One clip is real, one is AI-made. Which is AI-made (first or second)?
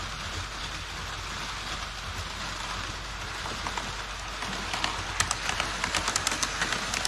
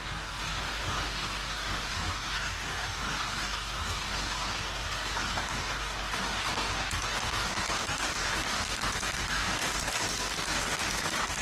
second